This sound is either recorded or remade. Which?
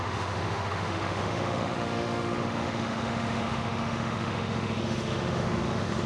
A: remade